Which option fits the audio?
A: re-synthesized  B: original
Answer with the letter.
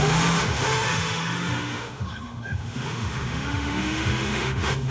A